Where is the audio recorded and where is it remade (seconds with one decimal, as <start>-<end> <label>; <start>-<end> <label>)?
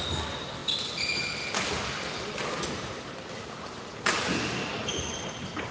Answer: 0.0-5.7 recorded